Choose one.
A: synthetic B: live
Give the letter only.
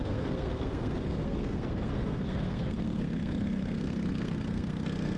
A